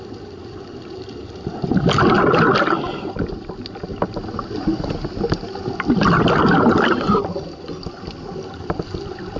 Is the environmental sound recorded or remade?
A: recorded